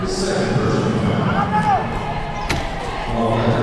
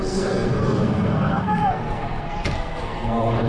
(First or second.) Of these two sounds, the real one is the first